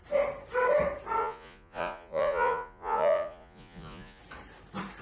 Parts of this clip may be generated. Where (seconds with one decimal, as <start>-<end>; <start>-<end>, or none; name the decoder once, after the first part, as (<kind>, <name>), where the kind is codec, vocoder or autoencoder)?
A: 1.2-4.2 (vocoder, Vocos)